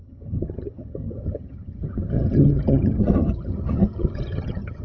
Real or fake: fake